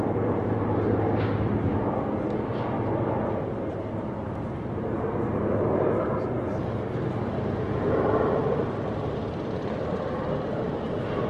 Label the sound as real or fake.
real